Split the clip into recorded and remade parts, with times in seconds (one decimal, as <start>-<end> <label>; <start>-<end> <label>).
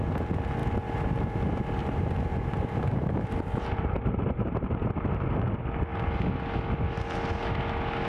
0.0-1.8 recorded; 1.8-4.8 remade; 4.8-8.1 recorded